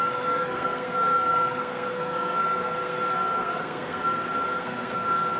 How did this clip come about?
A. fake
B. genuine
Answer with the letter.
A